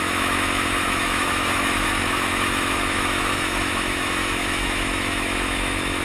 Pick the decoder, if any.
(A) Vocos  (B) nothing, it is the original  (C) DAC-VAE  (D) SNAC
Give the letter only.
C